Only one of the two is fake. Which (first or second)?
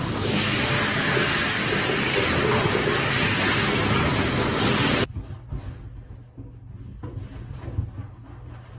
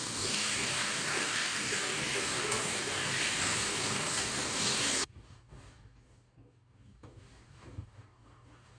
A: second